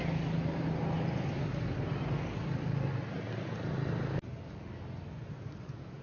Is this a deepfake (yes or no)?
no